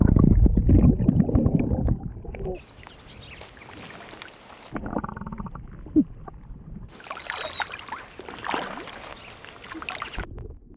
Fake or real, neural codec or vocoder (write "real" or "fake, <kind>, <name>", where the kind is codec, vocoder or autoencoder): real